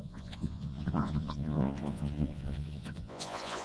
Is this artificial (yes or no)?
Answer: yes